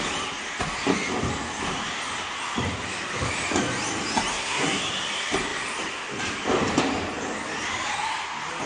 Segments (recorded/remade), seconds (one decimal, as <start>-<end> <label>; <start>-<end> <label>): 0.0-4.3 recorded; 4.3-4.8 remade; 4.8-8.7 recorded